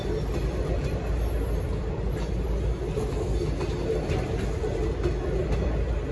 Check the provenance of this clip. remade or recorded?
recorded